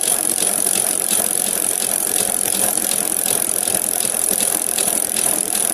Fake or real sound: fake